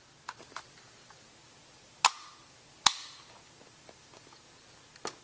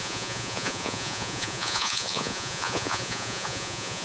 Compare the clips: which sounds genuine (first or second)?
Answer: first